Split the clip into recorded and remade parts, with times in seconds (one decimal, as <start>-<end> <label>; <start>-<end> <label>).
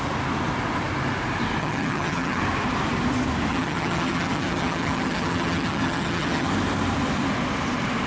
0.0-1.6 recorded; 1.6-2.4 remade; 2.4-3.5 recorded; 3.5-6.5 remade; 6.5-8.1 recorded